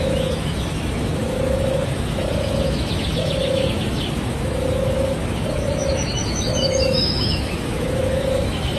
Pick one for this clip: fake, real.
fake